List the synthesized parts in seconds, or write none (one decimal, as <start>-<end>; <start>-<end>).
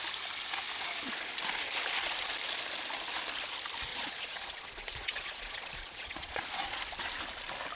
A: 3.9-6.8